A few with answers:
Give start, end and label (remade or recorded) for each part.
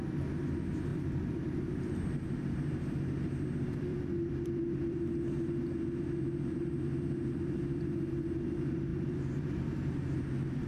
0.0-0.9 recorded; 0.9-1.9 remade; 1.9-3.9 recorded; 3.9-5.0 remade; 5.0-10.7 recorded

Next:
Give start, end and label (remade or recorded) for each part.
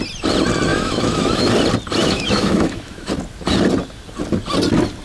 0.0-0.7 recorded; 0.7-1.5 remade; 1.5-2.0 recorded; 2.0-3.1 remade; 3.1-5.0 recorded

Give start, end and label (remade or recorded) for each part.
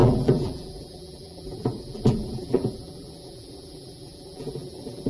0.0-5.1 remade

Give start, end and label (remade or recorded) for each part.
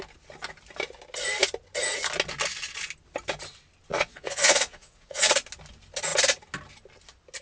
0.0-3.9 recorded; 3.9-5.3 remade; 5.3-7.4 recorded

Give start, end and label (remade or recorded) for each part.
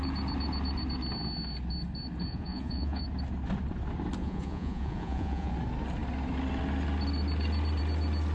0.0-2.3 recorded; 2.3-3.0 remade; 3.0-4.2 recorded; 4.2-5.5 remade; 5.5-8.3 recorded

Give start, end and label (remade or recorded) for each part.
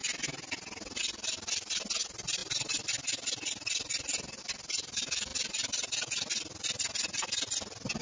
0.0-1.0 recorded; 1.0-8.0 remade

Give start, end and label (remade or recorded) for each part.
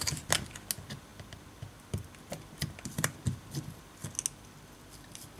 0.0-5.4 recorded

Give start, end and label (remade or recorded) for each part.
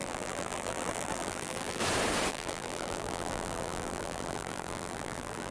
0.0-1.8 remade; 1.8-2.3 recorded; 2.3-5.5 remade